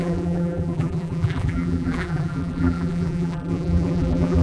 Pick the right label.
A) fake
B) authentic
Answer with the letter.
A